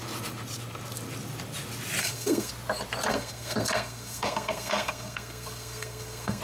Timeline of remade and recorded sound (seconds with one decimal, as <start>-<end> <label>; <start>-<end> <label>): 0.0-2.0 recorded; 2.0-2.5 remade; 2.5-3.1 recorded; 3.1-6.4 remade